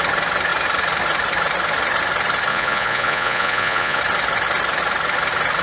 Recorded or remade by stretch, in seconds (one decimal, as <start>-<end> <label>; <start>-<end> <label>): 0.0-2.5 recorded; 2.5-4.0 remade; 4.0-5.6 recorded